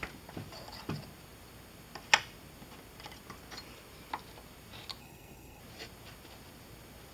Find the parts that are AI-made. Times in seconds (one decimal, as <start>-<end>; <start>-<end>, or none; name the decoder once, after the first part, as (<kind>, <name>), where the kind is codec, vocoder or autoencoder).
5.0-5.6 (codec, SNAC)